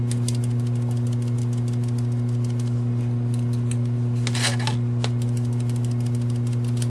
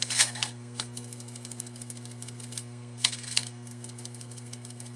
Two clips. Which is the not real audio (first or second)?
second